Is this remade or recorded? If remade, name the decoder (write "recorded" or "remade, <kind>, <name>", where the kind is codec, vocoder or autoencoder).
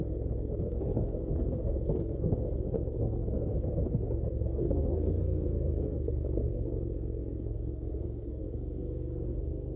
remade, codec, SNAC